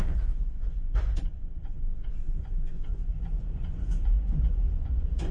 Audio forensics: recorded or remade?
remade